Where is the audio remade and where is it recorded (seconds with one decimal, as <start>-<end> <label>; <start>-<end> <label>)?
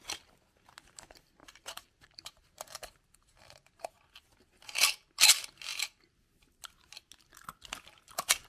0.0-1.4 recorded; 1.4-3.9 remade; 3.9-8.5 recorded